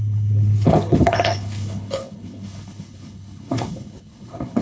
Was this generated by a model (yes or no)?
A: yes